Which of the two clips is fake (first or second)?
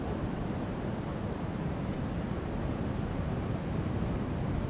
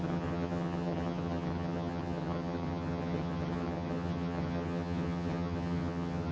second